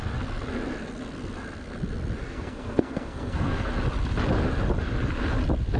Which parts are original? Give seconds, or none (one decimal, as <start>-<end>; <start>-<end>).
0.0-2.2; 3.7-5.8